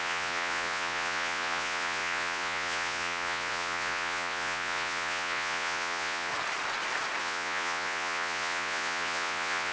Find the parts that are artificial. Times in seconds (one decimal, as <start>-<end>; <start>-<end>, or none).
0.0-6.3; 7.2-9.7